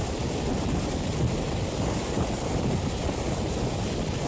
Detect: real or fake real